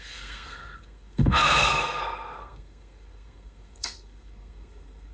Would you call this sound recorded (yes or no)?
no